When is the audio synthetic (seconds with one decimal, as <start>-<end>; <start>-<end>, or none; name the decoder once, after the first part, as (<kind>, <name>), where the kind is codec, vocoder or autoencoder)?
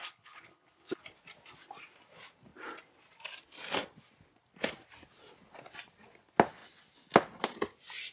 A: 0.0-1.0 (codec, HILCodec)